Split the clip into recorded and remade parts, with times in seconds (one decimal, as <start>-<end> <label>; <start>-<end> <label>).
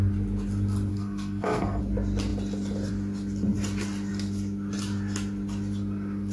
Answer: 0.0-0.9 recorded; 0.9-1.8 remade; 1.8-6.3 recorded